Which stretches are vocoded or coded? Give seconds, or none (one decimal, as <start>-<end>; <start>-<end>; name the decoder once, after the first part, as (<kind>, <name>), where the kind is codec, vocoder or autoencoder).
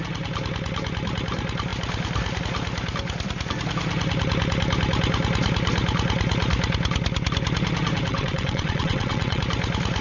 8.1-9.4 (vocoder, WaveNeXt)